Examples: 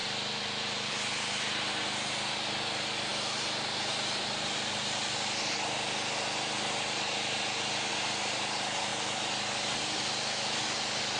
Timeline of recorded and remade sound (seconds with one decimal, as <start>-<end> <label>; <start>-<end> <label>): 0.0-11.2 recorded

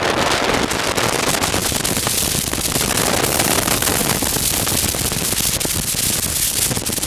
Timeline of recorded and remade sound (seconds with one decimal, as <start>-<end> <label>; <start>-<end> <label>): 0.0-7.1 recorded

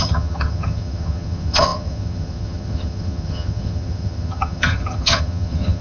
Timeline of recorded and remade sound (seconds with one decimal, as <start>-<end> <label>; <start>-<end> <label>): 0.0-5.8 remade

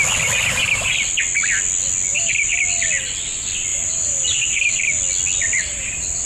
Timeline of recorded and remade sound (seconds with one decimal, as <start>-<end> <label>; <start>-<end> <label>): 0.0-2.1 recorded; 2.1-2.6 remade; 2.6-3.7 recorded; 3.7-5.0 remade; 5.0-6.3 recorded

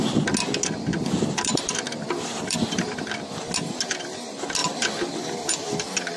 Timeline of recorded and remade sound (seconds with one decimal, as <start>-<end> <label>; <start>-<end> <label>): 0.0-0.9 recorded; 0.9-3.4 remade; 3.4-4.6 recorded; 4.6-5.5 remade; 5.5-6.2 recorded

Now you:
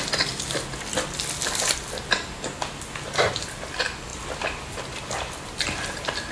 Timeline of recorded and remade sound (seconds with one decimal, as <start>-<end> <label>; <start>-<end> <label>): 0.0-6.3 recorded

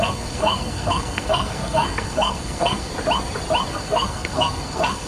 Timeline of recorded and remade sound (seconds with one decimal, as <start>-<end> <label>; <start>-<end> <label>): 0.0-2.9 remade; 2.9-3.7 recorded; 3.7-5.1 remade